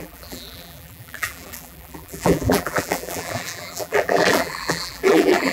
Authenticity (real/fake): fake